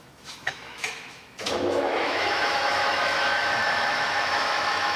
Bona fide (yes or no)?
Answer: no